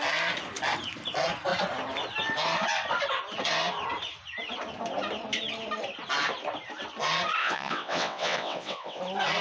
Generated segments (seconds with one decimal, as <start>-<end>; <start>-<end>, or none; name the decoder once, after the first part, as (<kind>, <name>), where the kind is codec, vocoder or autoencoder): 7.4-9.0 (vocoder, WaveNeXt)